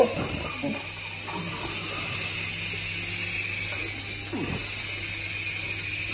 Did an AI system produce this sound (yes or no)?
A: no